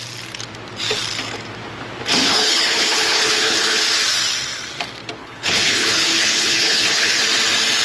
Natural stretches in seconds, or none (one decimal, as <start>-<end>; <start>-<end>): 0.0-2.2; 3.8-5.2; 7.2-7.8